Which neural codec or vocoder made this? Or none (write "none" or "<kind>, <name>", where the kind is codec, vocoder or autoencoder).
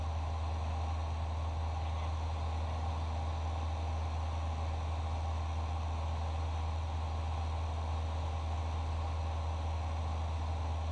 none